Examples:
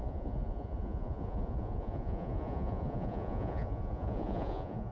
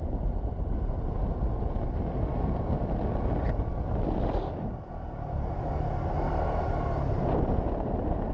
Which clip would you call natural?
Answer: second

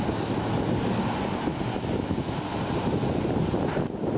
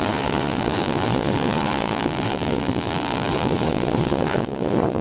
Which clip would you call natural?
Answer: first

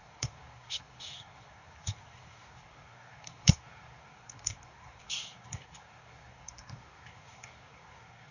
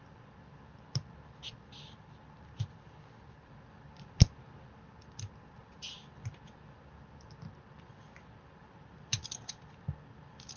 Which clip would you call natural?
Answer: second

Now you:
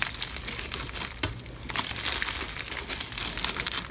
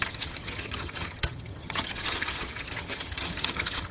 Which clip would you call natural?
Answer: first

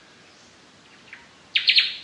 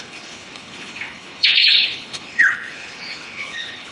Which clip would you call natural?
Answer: first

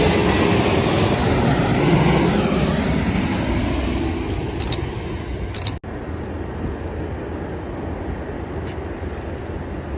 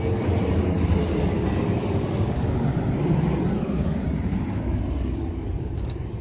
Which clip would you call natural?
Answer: first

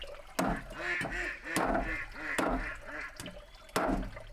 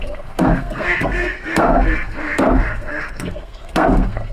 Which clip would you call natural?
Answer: first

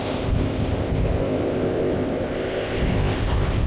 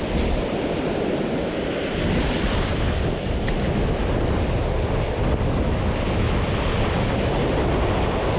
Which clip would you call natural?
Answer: second